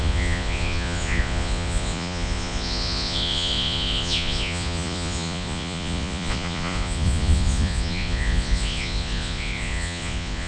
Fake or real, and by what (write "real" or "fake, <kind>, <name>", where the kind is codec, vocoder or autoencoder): fake, vocoder, Vocos